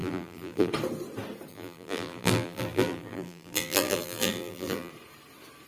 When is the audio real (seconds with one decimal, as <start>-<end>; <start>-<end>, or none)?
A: 0.7-1.5; 4.9-5.7